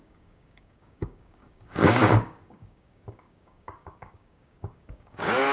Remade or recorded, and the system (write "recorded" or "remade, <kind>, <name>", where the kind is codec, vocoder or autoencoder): remade, codec, DAC